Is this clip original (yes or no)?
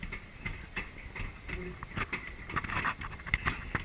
yes